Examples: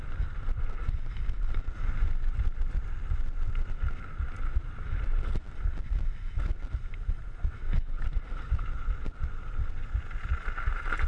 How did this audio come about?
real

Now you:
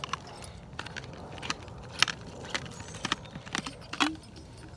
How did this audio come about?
real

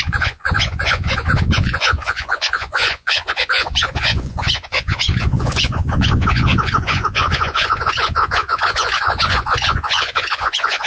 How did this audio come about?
fake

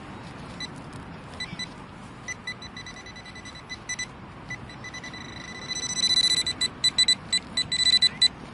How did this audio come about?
real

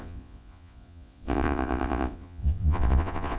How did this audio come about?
fake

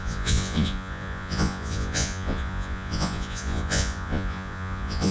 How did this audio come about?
fake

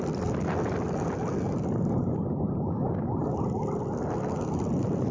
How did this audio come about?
real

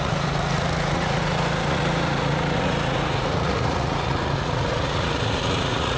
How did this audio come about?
fake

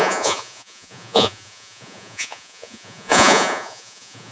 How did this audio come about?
fake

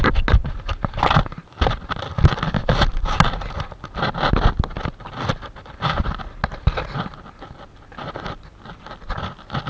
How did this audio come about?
real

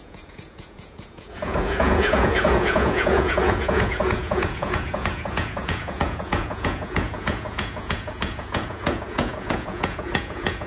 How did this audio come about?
fake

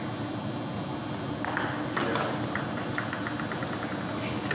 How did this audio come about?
real